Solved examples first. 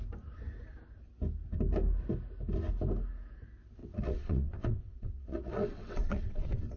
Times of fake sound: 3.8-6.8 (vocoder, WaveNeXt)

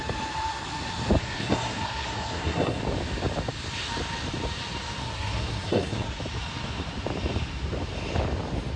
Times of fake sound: 1.2-2.8 (codec, SNAC); 5.0-6.2

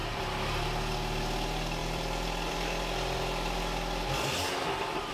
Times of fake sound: 0.0-1.2 (vocoder, BigVGAN v2); 1.8-3.6

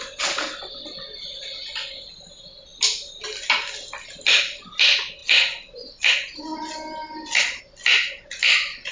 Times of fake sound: 2.7-3.2 (vocoder, BigVGAN v2); 5.2-6.0

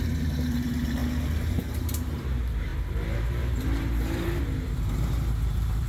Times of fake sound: 0.0-1.0 (vocoder, BigVGAN v2); 1.5-5.9

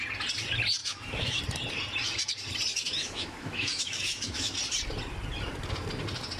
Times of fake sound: 0.8-1.4 (autoencoder, DAC-VAE); 2.7-4.5